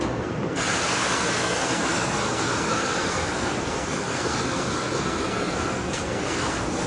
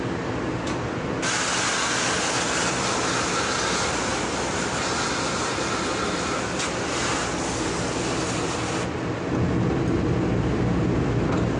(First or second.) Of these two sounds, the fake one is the first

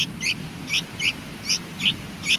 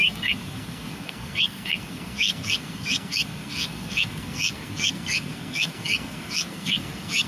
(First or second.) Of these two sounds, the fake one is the second